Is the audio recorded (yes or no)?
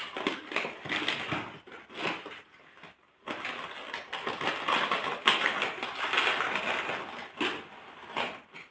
yes